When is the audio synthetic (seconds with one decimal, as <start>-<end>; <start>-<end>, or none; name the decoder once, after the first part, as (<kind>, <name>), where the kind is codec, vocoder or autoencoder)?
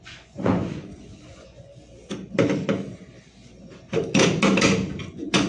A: 0.0-1.7 (vocoder, Vocos); 5.0-5.5